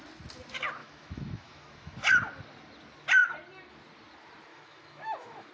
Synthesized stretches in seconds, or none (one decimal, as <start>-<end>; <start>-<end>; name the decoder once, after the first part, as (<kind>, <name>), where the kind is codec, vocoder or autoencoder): 0.8-2.0 (autoencoder, DAC-VAE); 4.5-5.5